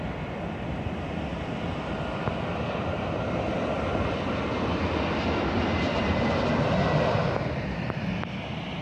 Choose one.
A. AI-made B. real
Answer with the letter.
B